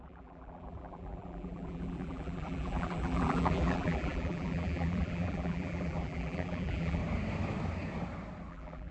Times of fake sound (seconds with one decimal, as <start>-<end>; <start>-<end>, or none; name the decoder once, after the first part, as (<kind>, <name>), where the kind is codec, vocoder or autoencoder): 0.0-7.0 (vocoder, BigVGAN v2); 8.5-8.9